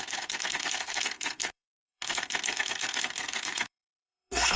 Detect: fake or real fake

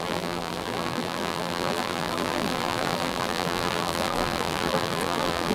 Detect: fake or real fake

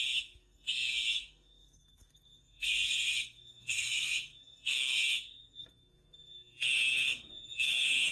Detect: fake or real fake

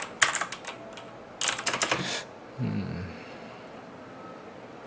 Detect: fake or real real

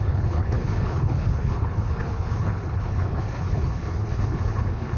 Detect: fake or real fake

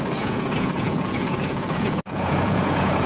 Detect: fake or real fake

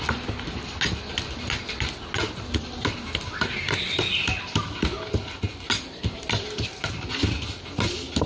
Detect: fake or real real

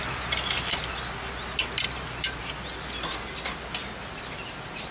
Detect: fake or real real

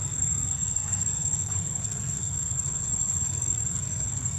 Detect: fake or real fake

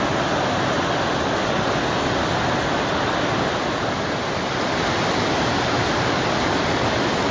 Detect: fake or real real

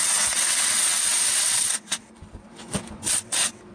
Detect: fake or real fake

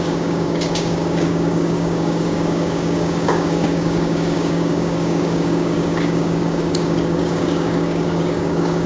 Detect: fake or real fake